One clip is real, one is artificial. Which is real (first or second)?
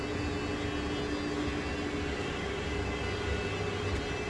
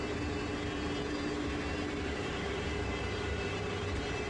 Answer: first